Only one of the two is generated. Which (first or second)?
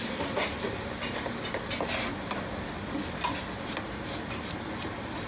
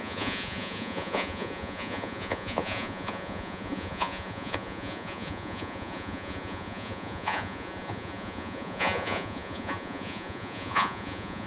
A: second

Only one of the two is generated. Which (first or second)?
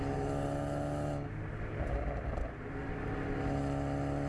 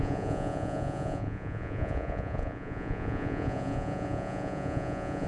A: second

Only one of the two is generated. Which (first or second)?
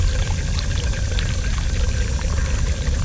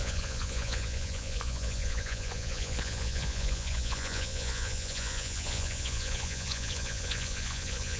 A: second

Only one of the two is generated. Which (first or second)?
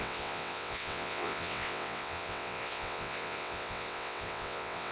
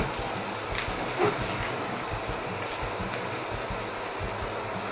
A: first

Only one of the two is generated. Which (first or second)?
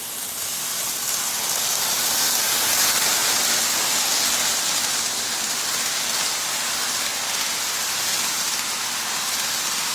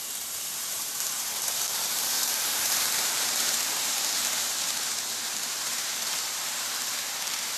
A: second